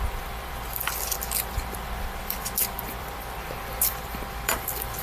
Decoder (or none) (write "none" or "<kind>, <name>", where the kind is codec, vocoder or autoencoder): vocoder, BigVGAN v2